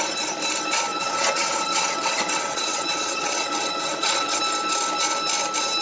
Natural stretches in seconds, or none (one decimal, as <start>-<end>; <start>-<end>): 0.0-0.9; 4.4-5.8